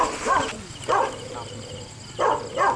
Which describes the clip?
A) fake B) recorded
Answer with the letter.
B